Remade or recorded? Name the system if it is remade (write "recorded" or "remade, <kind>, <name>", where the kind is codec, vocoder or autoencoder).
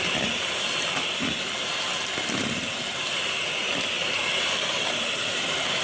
remade, vocoder, BigVGAN v2